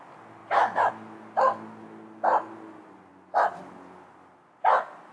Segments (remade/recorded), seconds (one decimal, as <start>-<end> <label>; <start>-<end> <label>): 0.0-0.4 recorded; 0.4-0.9 remade; 0.9-5.1 recorded